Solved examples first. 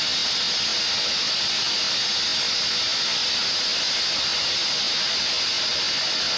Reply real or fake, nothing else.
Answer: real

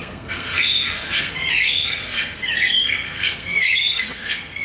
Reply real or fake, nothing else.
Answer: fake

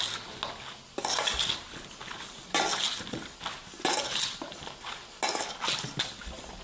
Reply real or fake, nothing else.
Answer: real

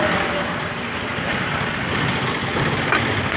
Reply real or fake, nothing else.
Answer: real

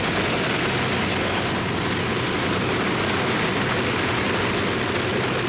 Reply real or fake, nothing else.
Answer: real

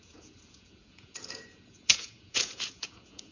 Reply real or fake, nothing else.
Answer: fake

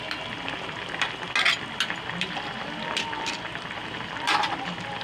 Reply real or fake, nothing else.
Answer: real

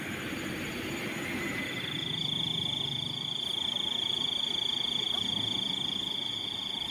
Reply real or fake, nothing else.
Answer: fake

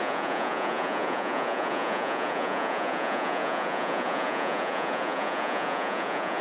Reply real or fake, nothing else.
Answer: fake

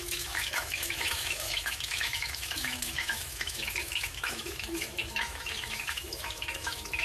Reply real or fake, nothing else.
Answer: fake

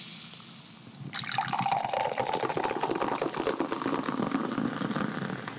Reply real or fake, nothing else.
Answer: real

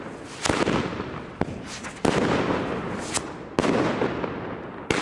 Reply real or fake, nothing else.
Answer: real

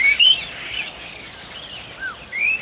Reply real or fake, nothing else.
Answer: real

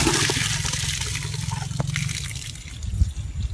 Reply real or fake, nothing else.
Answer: real